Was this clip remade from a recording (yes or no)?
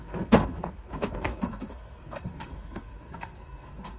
yes